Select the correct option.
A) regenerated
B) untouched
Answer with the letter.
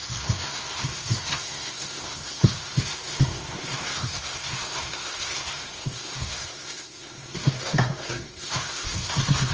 A